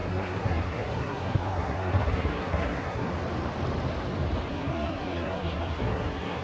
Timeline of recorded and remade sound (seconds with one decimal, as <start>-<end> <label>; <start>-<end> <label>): 0.0-3.1 remade; 3.1-4.5 recorded; 4.5-6.4 remade